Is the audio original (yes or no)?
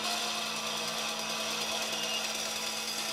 yes